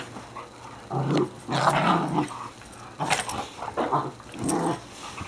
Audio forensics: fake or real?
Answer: real